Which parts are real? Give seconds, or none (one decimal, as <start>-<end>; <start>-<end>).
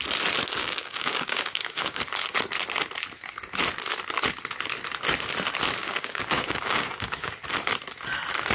0.0-0.6; 2.0-5.8; 7.4-8.5